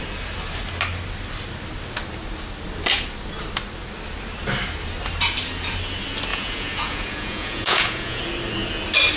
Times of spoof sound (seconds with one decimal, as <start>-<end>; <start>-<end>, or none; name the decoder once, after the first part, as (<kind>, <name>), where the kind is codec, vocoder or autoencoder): 6.3-8.2 (vocoder, Vocos)